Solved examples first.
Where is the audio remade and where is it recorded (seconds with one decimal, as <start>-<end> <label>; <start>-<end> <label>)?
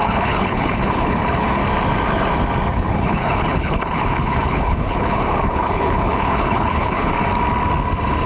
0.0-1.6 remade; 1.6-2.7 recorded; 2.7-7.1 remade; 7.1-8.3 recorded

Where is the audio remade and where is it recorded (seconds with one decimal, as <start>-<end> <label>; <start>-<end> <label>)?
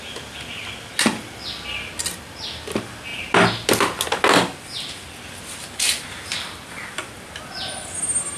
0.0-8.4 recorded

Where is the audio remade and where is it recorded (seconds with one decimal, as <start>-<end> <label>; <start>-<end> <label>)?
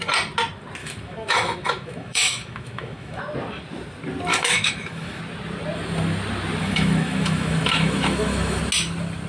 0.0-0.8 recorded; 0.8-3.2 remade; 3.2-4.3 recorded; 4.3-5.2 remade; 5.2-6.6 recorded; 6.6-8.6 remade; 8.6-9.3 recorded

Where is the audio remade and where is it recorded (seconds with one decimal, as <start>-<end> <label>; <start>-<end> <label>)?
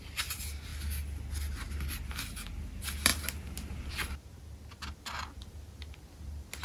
0.0-6.6 recorded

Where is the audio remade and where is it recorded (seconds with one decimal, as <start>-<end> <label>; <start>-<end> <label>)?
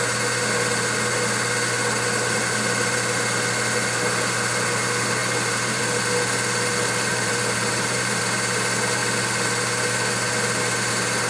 0.0-5.2 recorded; 5.2-5.8 remade; 5.8-7.1 recorded; 7.1-8.2 remade; 8.2-11.3 recorded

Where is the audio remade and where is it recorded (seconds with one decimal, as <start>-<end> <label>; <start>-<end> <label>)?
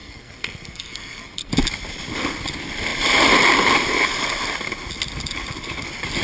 0.0-1.5 remade; 1.5-6.2 recorded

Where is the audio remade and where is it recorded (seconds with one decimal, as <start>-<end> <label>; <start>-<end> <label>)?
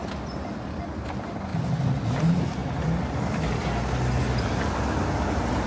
0.0-5.7 recorded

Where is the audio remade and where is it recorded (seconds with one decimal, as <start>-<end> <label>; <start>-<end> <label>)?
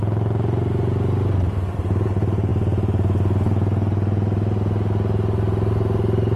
0.0-6.4 recorded